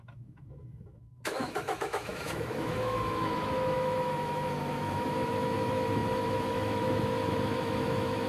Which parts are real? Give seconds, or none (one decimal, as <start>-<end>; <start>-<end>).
none